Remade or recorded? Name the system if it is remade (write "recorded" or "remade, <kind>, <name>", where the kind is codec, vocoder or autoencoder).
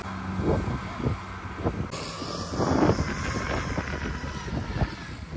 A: recorded